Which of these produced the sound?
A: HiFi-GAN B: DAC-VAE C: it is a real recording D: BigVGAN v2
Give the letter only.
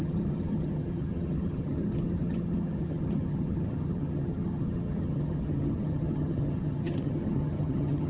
A